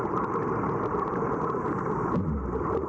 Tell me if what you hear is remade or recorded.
recorded